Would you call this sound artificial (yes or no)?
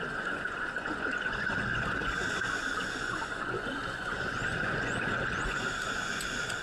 yes